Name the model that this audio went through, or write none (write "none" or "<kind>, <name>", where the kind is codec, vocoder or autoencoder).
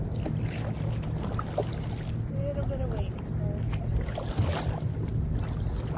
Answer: none